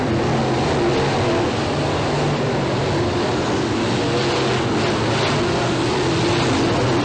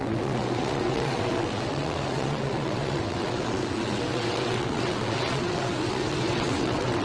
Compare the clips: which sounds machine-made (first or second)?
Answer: second